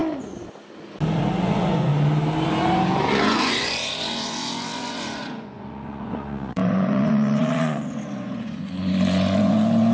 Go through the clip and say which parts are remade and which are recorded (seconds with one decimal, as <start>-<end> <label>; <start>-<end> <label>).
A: 0.0-1.4 recorded; 1.4-1.9 remade; 1.9-3.1 recorded; 3.1-9.9 remade